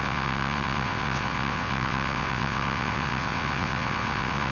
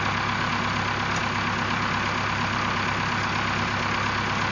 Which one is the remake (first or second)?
first